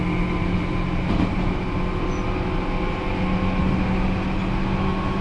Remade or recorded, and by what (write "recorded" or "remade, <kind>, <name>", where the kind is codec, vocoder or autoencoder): recorded